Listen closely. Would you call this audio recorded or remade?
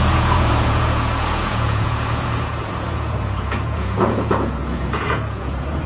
remade